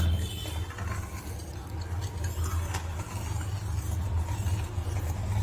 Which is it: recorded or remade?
recorded